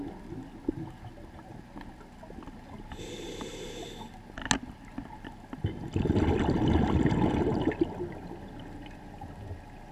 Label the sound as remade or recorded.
recorded